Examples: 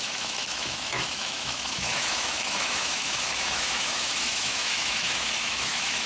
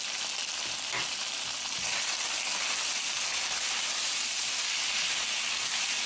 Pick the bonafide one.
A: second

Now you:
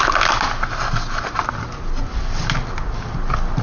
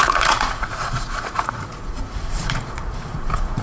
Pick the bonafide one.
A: first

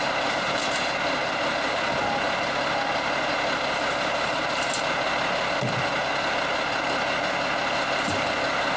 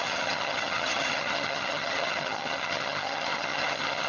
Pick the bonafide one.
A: first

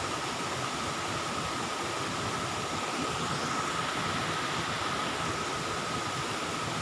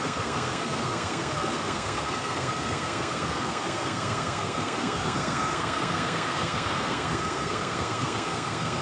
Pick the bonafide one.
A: first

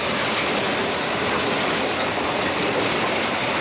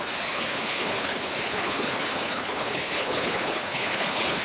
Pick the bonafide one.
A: first